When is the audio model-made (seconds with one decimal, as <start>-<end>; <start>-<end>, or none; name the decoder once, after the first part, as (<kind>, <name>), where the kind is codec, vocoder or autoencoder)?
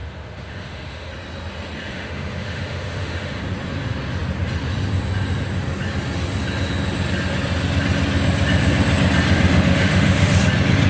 0.0-1.1 (autoencoder, DAC-VAE); 1.9-3.4; 9.5-10.4